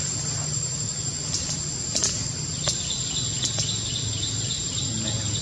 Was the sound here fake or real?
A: real